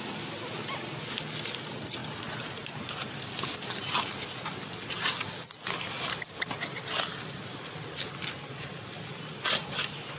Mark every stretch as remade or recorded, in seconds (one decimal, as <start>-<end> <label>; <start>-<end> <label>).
0.0-10.2 recorded